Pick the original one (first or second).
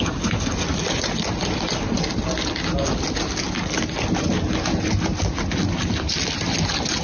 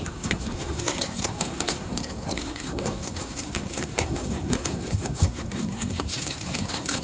first